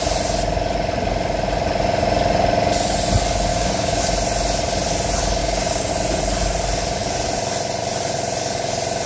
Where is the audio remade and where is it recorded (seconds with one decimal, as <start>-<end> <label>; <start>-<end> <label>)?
0.0-3.5 recorded; 3.5-4.0 remade; 4.0-5.4 recorded; 5.4-5.9 remade; 5.9-9.1 recorded